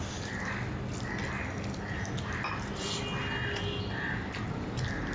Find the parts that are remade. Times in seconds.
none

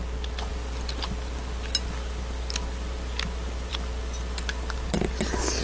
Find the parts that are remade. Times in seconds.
none

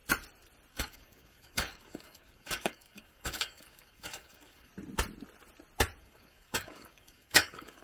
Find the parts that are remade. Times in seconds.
0.7-4.7; 6.0-7.8